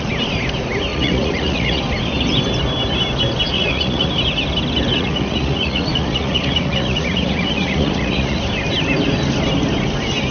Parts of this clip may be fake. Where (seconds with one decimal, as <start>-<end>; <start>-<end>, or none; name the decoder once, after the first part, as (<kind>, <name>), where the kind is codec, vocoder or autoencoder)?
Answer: 0.9-1.8 (vocoder, Vocos); 3.5-4.1; 4.9-8.4